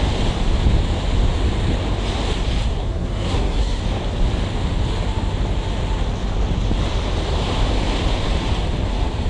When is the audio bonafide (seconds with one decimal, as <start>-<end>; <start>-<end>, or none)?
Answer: 0.0-2.7; 3.8-9.3